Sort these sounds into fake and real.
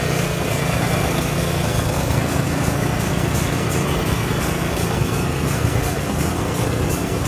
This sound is fake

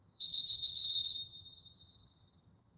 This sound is fake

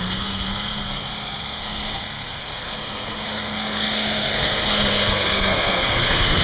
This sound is fake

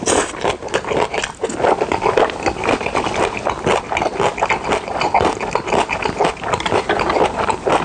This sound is real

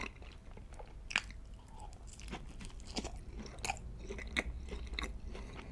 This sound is real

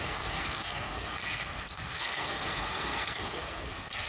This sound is fake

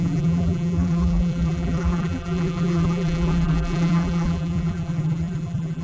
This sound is fake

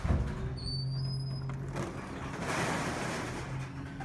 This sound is real